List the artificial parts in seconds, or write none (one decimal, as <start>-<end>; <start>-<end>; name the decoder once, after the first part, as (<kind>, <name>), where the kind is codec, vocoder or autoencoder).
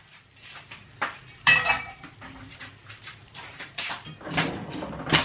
0.8-3.9 (vocoder, BigVGAN v2)